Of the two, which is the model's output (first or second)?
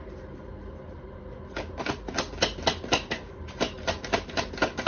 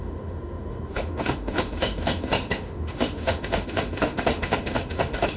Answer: second